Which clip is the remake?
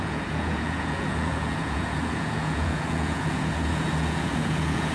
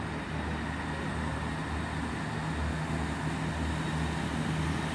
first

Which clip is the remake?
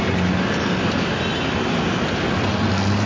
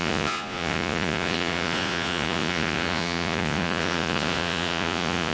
second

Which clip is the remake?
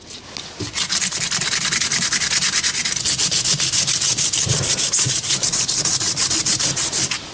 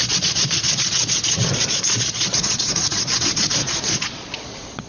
second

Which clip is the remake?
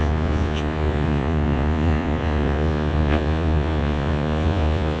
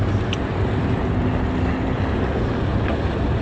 first